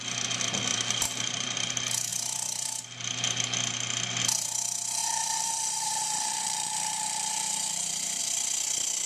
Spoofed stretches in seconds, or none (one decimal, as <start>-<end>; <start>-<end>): 0.7-1.7; 5.0-8.2